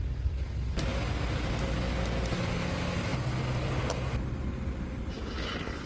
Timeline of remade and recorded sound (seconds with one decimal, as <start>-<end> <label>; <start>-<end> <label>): 0.0-5.9 recorded